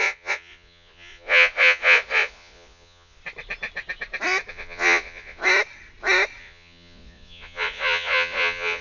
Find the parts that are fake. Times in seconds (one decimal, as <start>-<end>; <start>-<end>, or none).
0.0-3.2; 4.5-5.4; 6.4-8.8